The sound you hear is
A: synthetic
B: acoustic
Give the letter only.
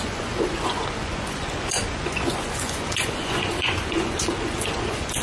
A